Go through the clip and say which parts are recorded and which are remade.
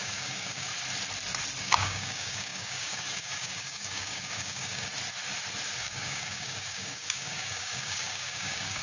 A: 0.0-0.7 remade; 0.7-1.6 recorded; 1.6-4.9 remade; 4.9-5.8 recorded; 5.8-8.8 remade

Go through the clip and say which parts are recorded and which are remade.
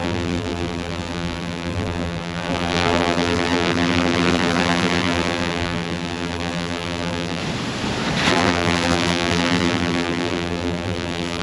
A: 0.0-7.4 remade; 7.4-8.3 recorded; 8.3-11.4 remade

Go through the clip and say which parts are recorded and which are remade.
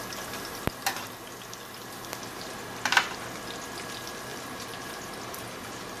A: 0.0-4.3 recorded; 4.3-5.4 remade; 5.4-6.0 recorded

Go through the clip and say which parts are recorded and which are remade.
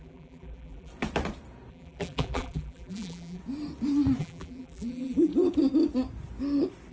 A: 0.0-0.9 remade; 0.9-1.7 recorded; 1.7-3.4 remade; 3.4-4.2 recorded; 4.2-5.3 remade; 5.3-6.9 recorded